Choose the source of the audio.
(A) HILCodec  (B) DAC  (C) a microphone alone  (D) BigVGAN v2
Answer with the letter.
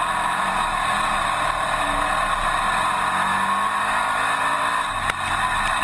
C